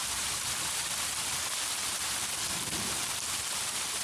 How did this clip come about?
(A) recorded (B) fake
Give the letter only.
A